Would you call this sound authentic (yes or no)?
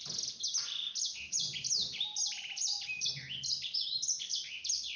yes